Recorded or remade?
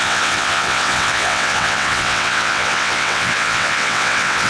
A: remade